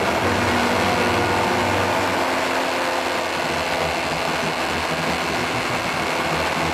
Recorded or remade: recorded